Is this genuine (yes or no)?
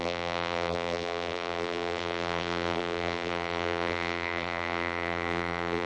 no